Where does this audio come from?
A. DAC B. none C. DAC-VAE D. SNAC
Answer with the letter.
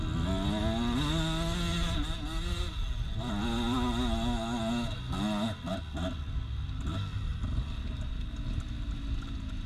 B